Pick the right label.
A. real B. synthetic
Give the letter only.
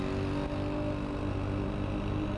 A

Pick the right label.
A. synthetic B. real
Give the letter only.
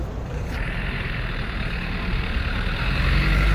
A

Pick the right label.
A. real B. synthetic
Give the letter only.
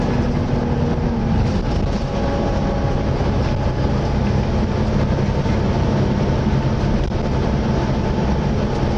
A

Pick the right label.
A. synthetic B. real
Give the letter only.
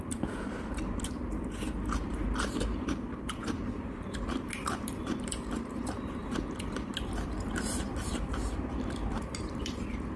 A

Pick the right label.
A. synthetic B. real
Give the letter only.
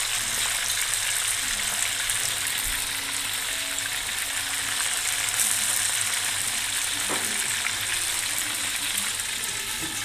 B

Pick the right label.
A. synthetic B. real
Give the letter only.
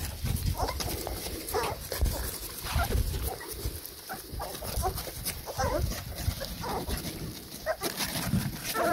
A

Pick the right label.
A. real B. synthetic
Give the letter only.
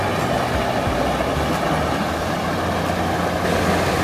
A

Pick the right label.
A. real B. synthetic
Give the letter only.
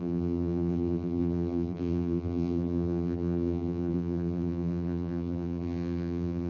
B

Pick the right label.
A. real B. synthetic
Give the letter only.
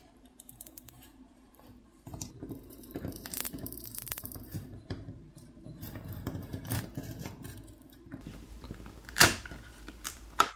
B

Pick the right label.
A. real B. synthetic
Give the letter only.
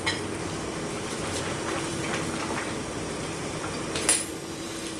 B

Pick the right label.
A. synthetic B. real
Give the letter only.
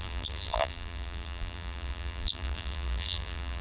A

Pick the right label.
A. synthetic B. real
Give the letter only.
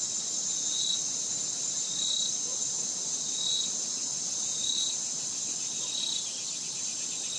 B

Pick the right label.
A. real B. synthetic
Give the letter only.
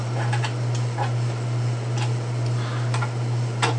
A